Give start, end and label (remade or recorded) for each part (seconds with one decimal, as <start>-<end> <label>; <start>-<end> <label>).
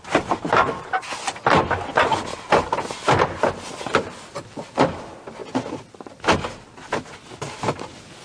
0.0-8.2 recorded